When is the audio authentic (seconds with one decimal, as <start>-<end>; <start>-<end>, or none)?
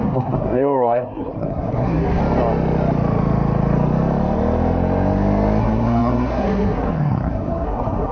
2.2-5.6